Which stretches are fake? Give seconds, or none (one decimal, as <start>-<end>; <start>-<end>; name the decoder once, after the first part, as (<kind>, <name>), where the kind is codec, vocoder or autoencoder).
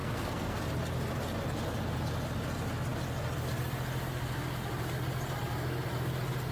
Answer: 0.0-0.6 (codec, SNAC)